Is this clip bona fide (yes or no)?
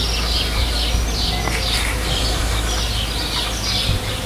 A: yes